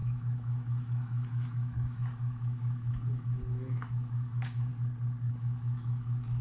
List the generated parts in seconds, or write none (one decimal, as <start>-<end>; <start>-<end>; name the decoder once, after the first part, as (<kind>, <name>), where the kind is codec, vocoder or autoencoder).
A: 0.0-4.7 (autoencoder, DAC-VAE); 5.3-6.4